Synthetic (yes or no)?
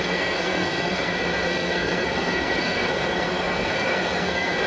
yes